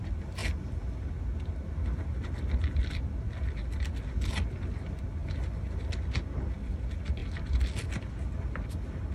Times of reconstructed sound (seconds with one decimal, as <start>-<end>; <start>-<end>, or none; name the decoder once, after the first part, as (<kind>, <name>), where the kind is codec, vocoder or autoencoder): none